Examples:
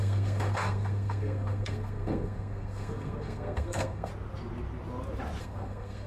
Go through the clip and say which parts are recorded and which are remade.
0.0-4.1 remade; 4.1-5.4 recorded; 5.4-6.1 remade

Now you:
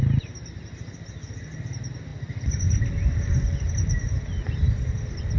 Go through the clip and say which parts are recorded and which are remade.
0.0-5.4 recorded

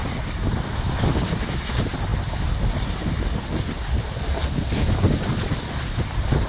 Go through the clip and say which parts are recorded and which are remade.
0.0-6.5 recorded

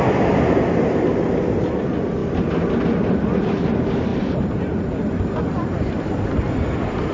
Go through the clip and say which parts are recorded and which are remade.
0.0-7.1 recorded

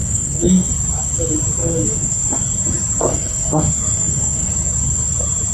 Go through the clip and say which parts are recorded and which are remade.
0.0-0.7 remade; 0.7-1.6 recorded; 1.6-2.4 remade; 2.4-3.1 recorded; 3.1-4.5 remade; 4.5-5.5 recorded

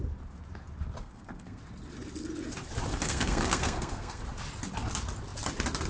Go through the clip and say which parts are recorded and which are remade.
0.0-1.0 recorded; 1.0-1.6 remade; 1.6-2.9 recorded; 2.9-4.2 remade; 4.2-5.9 recorded

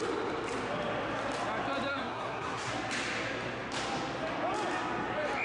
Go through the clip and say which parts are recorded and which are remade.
0.0-1.9 recorded; 1.9-2.7 remade; 2.7-5.4 recorded